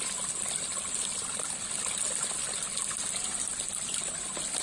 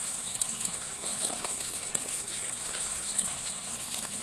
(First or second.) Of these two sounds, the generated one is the second